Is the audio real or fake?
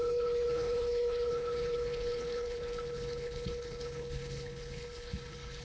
fake